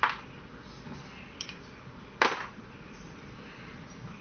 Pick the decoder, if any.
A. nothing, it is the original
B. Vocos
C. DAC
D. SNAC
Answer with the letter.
A